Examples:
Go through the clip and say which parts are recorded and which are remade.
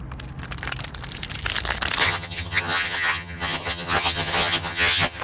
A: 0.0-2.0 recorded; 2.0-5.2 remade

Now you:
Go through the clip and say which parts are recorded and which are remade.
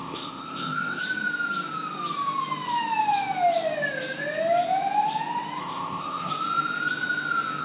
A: 0.0-1.0 remade; 1.0-5.6 recorded; 5.6-6.3 remade; 6.3-7.6 recorded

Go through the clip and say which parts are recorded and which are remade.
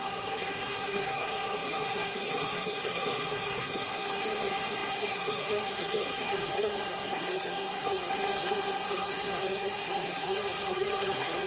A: 0.0-11.5 remade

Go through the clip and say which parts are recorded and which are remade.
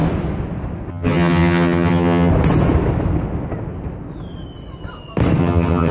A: 0.0-0.9 recorded; 0.9-2.3 remade; 2.3-5.4 recorded; 5.4-5.9 remade